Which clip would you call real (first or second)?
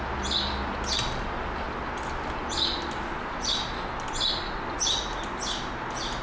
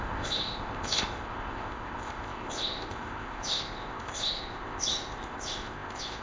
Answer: first